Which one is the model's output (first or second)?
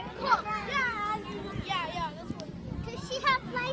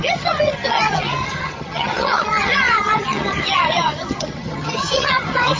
second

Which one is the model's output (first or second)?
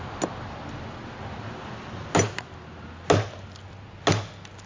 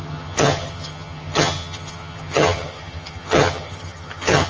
second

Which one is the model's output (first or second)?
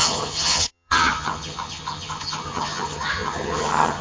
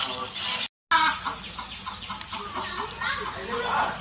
first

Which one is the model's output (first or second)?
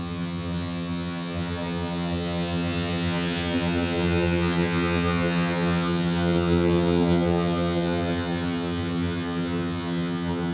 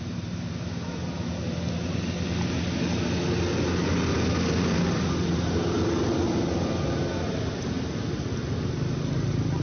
first